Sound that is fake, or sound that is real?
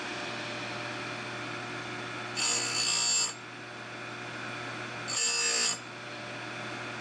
real